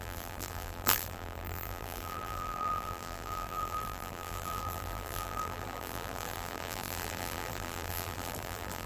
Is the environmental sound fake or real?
fake